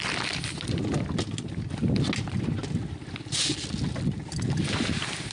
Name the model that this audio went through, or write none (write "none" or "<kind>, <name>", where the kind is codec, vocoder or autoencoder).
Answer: none